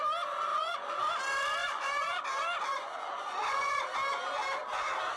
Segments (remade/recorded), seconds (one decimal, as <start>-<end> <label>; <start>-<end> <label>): 0.0-0.5 recorded; 0.5-1.1 remade; 1.1-1.6 recorded; 1.6-2.2 remade; 2.2-2.7 recorded; 2.7-3.8 remade; 3.8-5.2 recorded